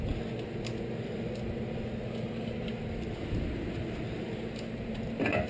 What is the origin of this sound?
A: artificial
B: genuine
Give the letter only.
B